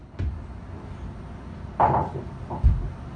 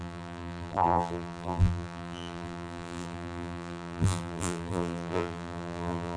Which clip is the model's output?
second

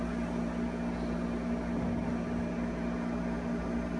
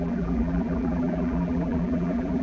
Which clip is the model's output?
second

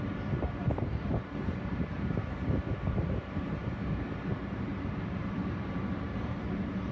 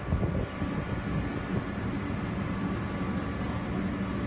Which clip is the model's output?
first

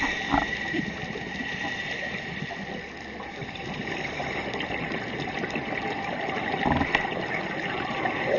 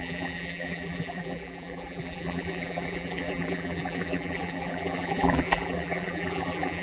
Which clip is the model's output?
second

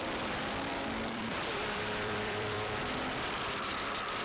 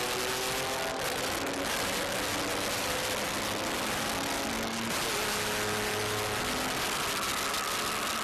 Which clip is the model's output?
first